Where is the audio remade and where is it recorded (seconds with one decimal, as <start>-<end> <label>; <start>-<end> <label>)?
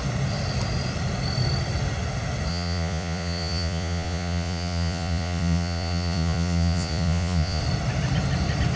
0.0-2.5 recorded; 2.5-7.6 remade; 7.6-8.8 recorded